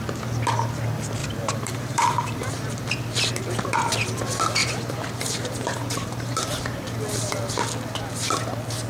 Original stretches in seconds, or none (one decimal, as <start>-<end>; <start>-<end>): 0.0-1.2; 2.5-4.6; 6.8-8.9